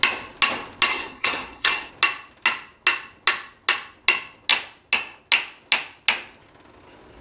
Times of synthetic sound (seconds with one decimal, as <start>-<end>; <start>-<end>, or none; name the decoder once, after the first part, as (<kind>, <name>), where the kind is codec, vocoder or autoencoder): 0.9-1.9 (codec, SNAC)